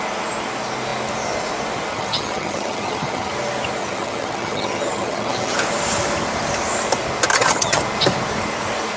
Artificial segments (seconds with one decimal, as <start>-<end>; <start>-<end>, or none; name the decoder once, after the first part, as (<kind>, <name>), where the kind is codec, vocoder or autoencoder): 1.9-3.3 (vocoder, HiFi-GAN); 3.8-5.5; 7.3-7.8